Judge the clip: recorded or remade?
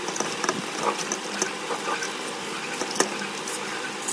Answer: recorded